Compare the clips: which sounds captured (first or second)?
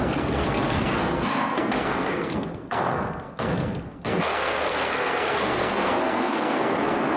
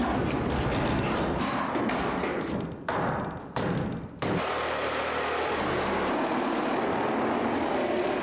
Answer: second